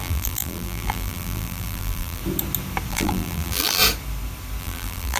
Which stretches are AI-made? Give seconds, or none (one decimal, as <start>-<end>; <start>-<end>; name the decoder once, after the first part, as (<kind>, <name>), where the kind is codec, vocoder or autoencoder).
0.0-2.2 (vocoder, BigVGAN v2); 2.9-3.8; 4.6-5.2